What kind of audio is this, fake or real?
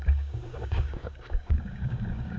fake